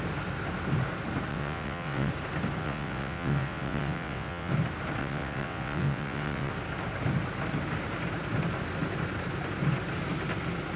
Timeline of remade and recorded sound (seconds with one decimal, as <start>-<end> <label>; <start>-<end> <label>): 0.0-1.3 recorded; 1.3-2.1 remade; 2.1-2.6 recorded; 2.6-4.5 remade; 4.5-5.0 recorded; 5.0-6.5 remade; 6.5-10.8 recorded